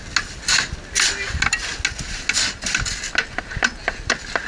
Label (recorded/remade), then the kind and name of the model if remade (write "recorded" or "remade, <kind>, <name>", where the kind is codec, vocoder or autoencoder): recorded